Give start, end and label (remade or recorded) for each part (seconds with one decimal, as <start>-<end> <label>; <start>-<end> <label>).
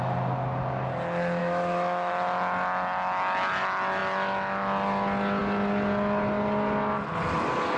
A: 0.0-1.4 recorded; 1.4-2.1 remade; 2.1-7.8 recorded